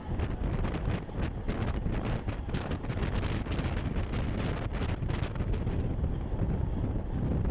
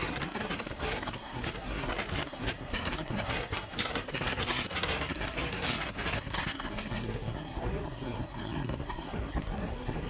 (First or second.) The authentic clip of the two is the first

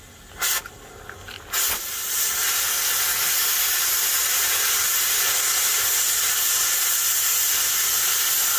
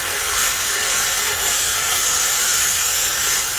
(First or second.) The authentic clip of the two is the first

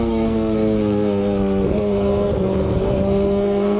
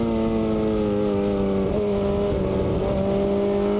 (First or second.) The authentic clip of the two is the second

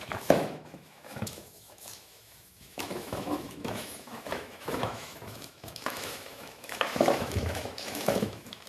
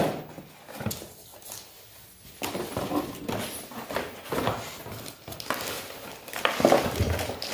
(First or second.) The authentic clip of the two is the second